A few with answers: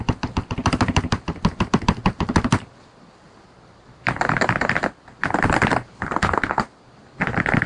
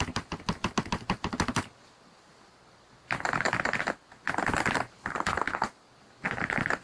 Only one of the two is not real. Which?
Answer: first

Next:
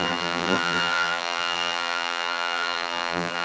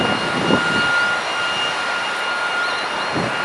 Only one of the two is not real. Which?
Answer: first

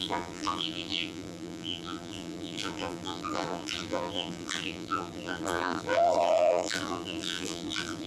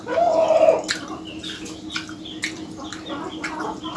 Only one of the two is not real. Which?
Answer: first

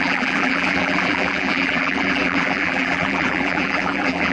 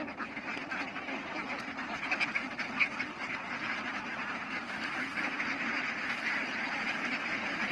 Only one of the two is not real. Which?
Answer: first